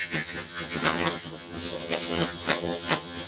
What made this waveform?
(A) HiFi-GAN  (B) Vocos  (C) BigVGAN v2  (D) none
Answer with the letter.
A